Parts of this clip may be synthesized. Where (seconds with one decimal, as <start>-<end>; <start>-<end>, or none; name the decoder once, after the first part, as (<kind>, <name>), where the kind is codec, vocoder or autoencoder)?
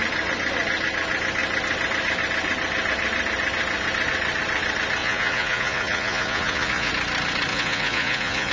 5.0-6.9 (vocoder, Vocos); 7.5-8.5